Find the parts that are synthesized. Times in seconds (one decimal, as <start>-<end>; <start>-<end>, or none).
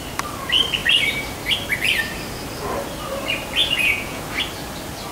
3.6-4.2